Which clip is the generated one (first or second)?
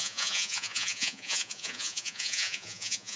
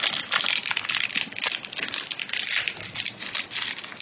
first